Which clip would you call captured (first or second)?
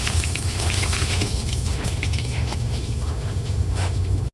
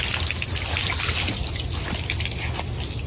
second